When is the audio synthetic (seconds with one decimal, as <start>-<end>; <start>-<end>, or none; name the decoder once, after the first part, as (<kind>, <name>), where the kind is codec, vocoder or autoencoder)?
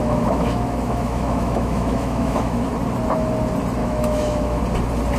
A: 0.0-2.7 (autoencoder, DAC-VAE); 3.8-4.6